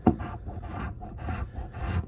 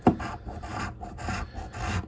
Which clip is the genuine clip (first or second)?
second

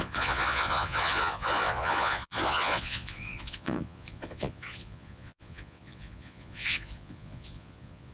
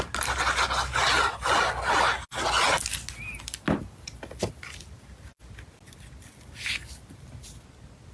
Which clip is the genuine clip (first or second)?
second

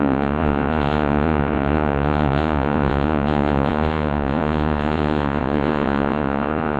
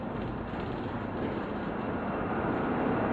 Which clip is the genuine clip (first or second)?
second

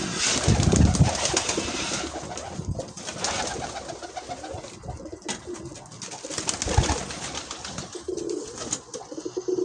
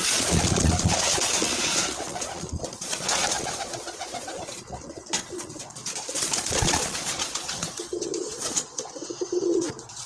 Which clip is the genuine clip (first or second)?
first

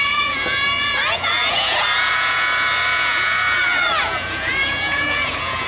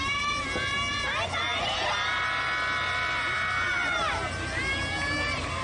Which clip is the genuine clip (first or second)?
second